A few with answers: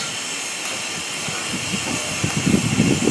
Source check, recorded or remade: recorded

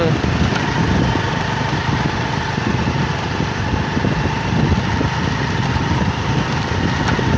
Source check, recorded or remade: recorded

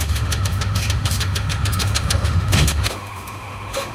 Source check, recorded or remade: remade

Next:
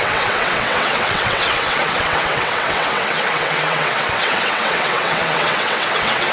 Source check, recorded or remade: remade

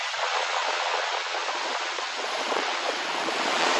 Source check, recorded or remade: remade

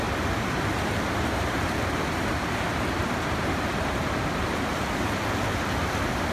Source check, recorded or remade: recorded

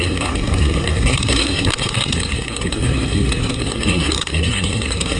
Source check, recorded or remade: remade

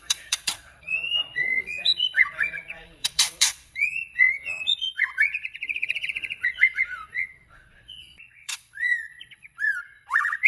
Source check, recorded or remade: remade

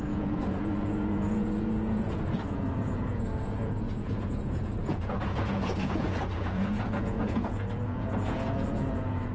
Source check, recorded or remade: remade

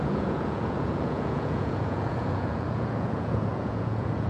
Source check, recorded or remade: remade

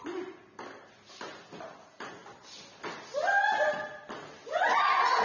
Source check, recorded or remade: recorded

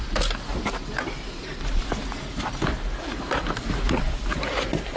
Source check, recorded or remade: remade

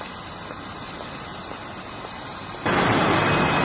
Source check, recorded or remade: recorded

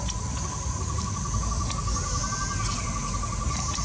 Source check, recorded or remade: remade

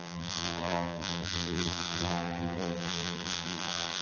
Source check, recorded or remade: remade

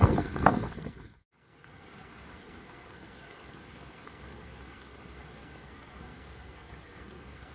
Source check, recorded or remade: remade